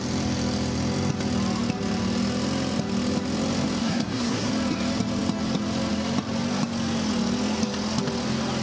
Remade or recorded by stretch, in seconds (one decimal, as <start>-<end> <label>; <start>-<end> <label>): 0.0-3.8 recorded; 3.8-4.5 remade; 4.5-8.6 recorded